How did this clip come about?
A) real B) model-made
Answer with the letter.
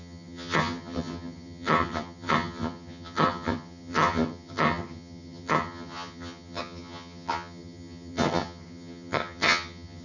B